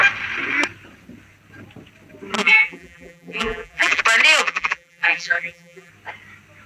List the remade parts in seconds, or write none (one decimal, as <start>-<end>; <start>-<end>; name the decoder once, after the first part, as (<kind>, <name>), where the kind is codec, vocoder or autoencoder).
2.4-4.0 (vocoder, BigVGAN v2); 4.4-5.9